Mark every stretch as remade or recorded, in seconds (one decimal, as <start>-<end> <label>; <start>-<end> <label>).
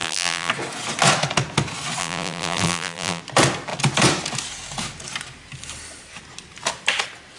0.0-0.5 remade; 0.5-2.0 recorded; 2.0-3.2 remade; 3.2-7.4 recorded